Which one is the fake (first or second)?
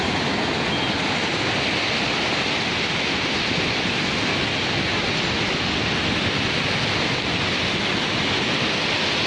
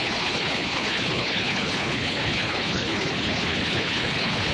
second